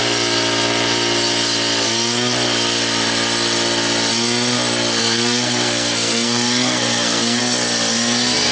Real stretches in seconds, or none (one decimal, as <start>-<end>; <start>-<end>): 0.0-5.0; 7.4-8.5